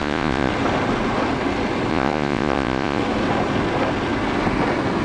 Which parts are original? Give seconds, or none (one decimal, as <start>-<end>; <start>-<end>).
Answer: 0.5-1.9; 3.0-5.0